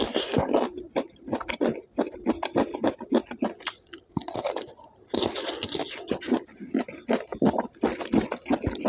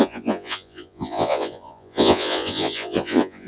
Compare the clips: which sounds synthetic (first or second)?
second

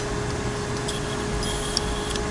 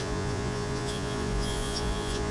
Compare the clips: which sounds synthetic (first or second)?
second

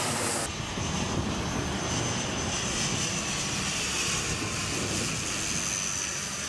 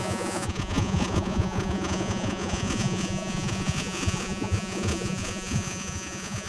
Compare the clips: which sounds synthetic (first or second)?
second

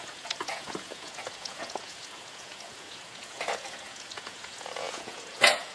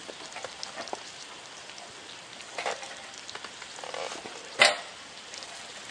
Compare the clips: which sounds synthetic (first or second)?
first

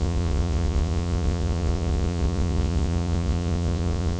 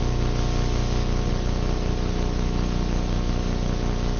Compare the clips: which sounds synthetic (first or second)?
first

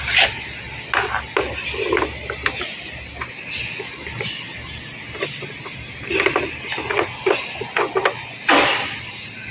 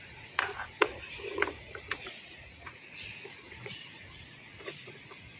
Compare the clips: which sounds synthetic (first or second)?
second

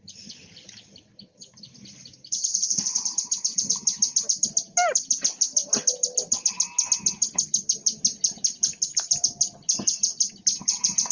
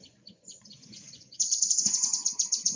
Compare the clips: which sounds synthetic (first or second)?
second